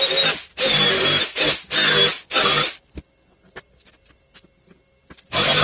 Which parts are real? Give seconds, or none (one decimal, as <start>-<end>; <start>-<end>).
0.0-5.6